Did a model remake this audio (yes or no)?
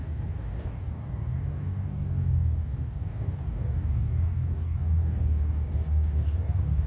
yes